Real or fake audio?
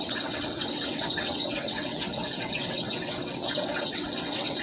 fake